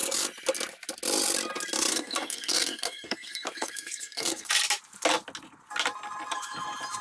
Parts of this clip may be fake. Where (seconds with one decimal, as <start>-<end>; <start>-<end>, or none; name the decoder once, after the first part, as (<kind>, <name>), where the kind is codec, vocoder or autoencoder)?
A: 1.9-4.5 (codec, SNAC)

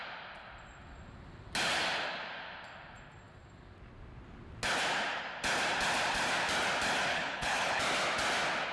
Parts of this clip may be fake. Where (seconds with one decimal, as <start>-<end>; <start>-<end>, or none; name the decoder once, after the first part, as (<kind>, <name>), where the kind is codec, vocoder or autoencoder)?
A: 7.1-7.8 (codec, HILCodec)

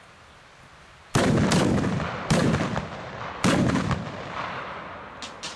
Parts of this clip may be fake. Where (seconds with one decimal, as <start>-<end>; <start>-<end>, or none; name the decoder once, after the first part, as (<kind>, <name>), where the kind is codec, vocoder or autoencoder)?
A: none

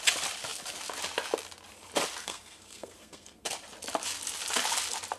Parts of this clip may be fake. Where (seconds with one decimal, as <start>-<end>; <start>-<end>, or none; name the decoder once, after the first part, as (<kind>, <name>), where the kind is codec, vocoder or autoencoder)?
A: 2.2-3.5 (codec, SNAC)

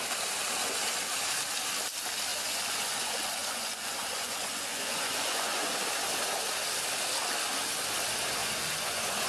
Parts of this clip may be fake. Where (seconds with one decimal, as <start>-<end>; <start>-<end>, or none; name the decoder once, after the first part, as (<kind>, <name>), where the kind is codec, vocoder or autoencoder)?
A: 2.3-5.7 (vocoder, Vocos); 8.4-9.3